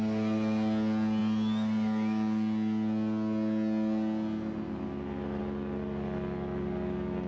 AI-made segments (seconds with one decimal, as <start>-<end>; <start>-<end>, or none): none